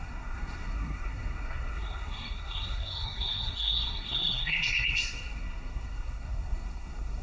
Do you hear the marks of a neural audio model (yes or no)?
yes